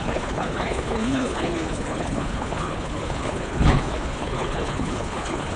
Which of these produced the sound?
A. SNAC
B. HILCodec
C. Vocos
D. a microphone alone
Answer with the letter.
B